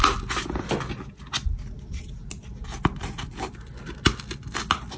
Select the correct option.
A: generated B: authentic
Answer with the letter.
B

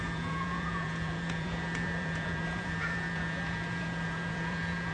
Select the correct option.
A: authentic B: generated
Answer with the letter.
B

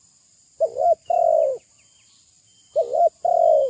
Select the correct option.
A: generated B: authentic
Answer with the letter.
B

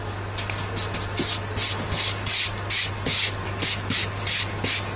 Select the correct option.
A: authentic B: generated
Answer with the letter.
A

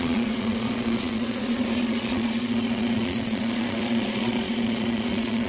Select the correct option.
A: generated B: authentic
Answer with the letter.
A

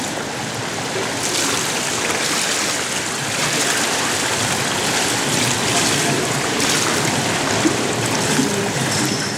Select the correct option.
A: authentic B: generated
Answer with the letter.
A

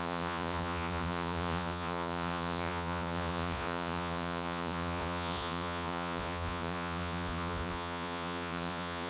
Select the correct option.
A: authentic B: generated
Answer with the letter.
B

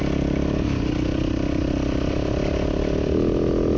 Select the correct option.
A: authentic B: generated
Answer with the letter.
A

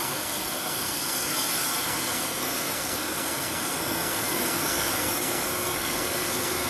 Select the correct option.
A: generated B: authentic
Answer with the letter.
A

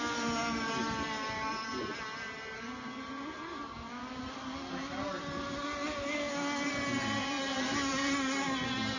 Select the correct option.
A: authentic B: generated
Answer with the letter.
A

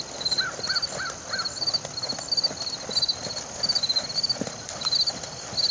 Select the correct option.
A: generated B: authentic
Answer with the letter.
B